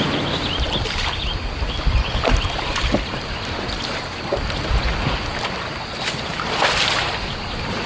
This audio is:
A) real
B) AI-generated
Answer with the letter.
A